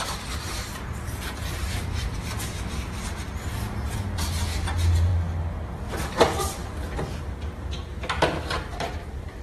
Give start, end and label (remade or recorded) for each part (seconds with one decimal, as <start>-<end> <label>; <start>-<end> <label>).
0.0-1.6 remade; 1.6-2.7 recorded; 2.7-5.1 remade; 5.1-5.9 recorded; 5.9-6.6 remade; 6.6-9.0 recorded; 9.0-9.4 remade